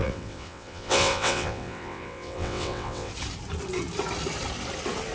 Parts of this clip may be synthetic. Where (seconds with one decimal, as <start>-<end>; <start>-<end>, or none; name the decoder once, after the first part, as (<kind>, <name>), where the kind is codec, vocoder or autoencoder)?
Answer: 0.0-3.1 (vocoder, WaveNeXt)